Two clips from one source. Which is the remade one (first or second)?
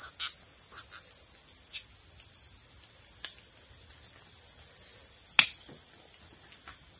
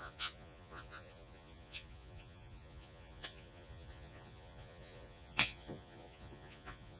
second